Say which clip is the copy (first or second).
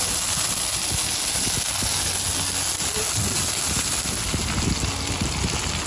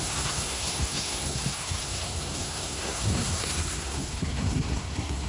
second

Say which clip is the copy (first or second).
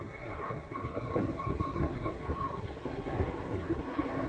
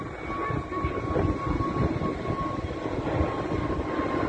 first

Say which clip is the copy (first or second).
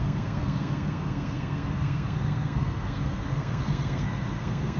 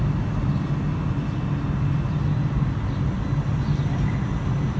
first